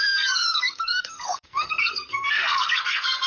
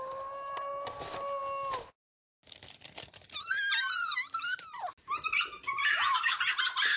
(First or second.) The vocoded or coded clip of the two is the first